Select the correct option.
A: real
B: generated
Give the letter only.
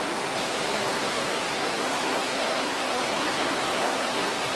B